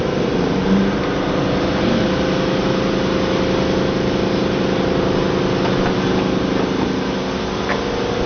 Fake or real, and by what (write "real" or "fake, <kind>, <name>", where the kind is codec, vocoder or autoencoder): real